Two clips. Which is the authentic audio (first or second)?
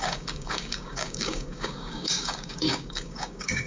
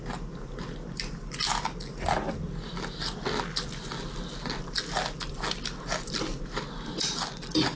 second